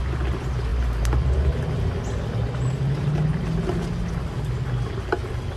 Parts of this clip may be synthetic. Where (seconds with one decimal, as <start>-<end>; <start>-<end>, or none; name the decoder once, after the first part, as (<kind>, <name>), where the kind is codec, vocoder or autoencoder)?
none